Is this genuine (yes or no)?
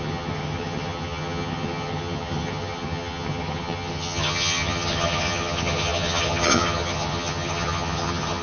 no